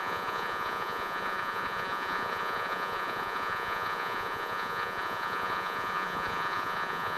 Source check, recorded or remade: remade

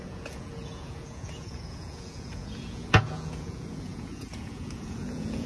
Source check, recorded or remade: remade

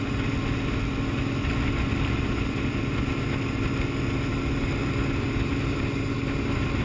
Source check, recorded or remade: recorded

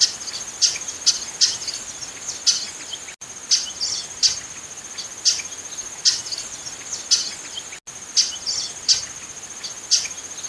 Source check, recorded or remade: recorded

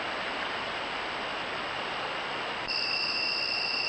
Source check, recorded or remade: recorded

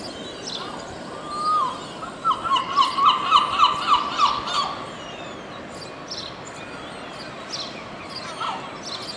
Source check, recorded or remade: recorded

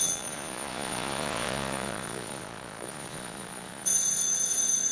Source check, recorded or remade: remade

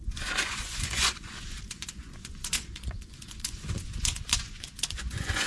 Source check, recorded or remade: remade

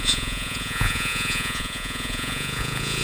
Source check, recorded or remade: remade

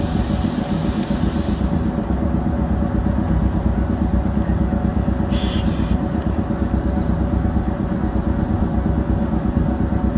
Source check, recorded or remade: recorded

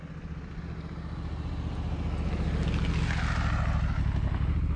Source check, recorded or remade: recorded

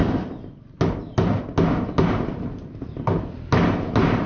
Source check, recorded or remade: recorded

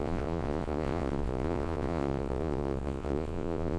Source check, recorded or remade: remade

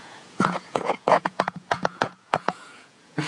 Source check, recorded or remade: remade